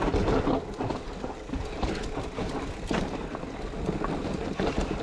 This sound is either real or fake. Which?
real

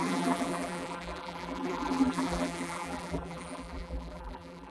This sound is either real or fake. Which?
fake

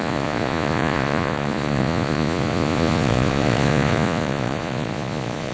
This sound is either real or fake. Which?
fake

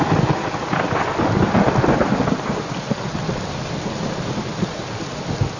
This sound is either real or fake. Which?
real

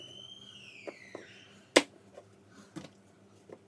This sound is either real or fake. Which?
real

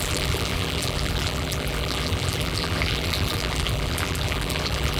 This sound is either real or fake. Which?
fake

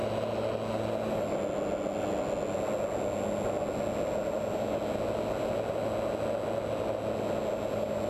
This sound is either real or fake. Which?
real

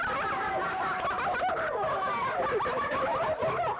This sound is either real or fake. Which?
real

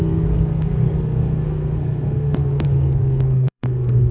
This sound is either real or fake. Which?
fake